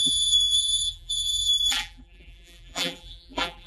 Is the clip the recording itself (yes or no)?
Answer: no